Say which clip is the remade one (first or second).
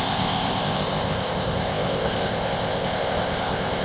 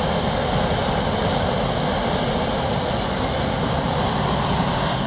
first